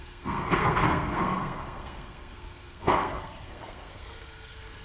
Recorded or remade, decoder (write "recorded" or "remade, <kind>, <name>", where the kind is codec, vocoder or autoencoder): remade, codec, SNAC